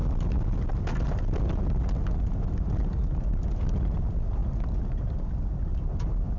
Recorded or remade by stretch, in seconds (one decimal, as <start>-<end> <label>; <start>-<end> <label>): 0.0-6.4 recorded